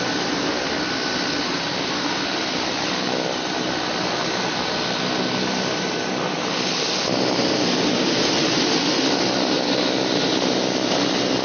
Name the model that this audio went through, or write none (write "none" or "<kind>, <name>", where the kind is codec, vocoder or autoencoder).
none